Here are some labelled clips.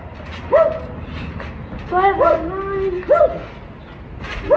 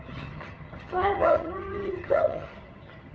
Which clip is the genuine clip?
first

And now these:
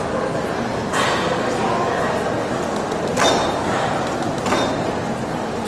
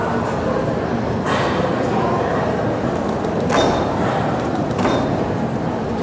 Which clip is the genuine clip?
first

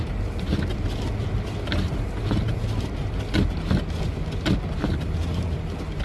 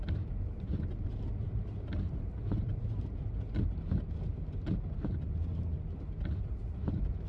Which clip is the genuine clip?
first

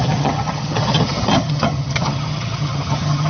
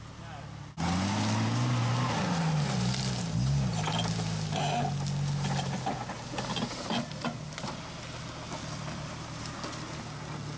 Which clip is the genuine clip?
second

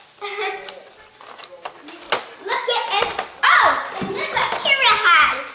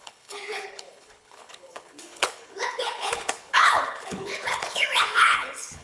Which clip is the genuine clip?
first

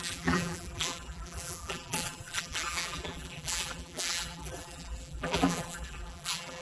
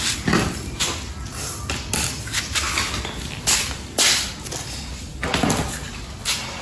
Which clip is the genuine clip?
second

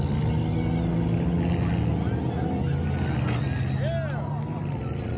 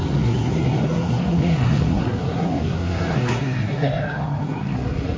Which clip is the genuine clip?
first